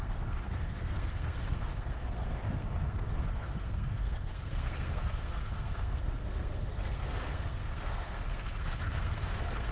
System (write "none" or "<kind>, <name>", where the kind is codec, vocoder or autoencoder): codec, SNAC